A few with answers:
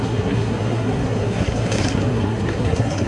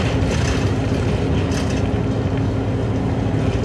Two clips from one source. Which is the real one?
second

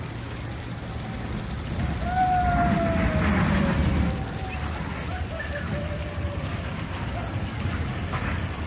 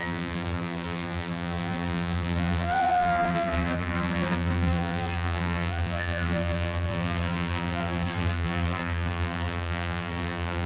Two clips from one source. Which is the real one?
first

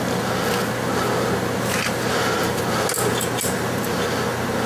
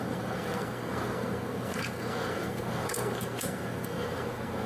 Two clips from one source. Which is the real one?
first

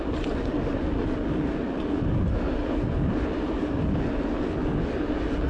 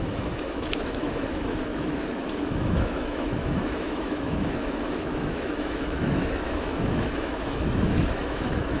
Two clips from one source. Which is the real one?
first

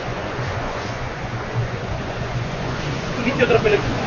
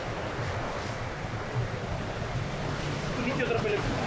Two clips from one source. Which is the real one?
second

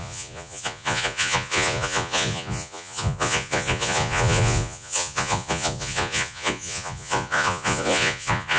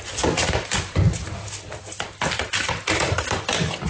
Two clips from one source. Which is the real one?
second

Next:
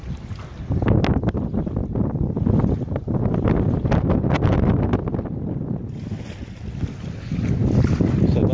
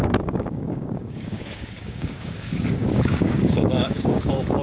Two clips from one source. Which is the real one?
first